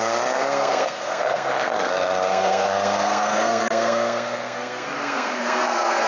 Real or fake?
fake